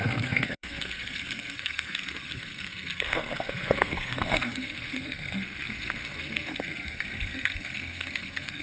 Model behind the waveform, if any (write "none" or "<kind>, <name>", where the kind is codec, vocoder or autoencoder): codec, SNAC